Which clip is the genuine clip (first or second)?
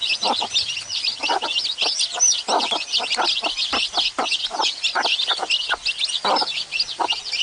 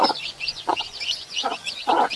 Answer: first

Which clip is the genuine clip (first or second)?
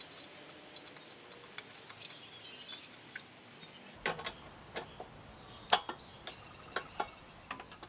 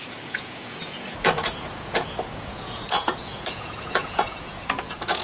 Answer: first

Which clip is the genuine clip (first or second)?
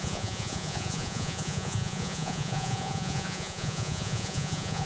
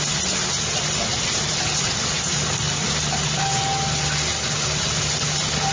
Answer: second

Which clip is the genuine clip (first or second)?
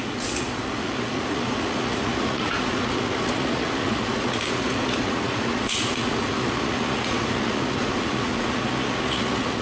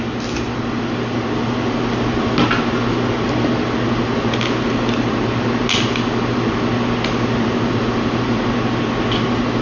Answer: second